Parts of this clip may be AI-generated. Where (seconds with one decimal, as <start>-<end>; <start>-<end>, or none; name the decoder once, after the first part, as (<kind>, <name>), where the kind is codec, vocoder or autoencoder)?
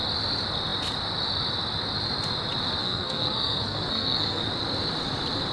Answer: 2.8-4.4 (codec, SNAC)